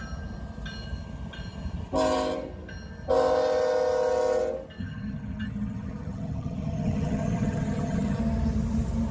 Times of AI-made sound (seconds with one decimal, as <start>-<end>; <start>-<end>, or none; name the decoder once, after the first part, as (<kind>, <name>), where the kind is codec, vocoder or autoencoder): 4.8-8.2 (vocoder, HiFi-GAN)